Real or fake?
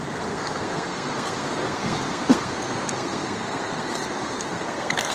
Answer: fake